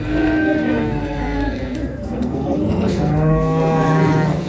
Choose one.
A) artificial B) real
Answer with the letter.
A